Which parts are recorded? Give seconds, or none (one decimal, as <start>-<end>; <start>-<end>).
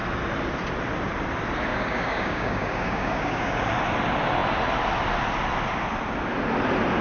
0.0-1.7; 3.8-7.0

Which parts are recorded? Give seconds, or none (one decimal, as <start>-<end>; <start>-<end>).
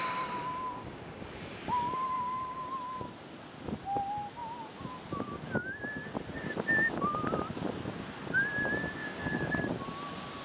0.0-0.4; 2.7-9.0; 9.6-10.4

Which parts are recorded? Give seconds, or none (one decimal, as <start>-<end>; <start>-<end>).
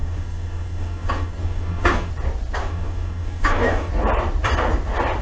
2.1-2.6; 3.9-5.2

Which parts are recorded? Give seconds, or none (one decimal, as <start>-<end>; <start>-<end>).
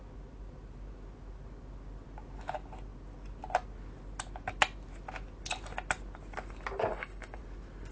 0.0-6.9; 7.4-7.9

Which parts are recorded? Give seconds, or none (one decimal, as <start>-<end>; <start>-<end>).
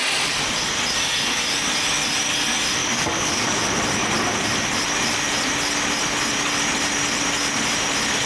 0.0-2.8; 3.6-8.3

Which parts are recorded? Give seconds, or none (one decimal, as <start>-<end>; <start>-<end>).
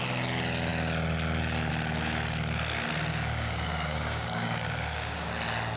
0.0-3.1; 5.3-5.8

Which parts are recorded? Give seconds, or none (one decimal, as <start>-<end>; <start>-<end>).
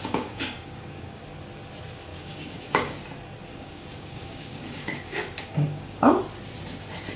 1.2-2.1; 2.9-3.5; 6.2-7.2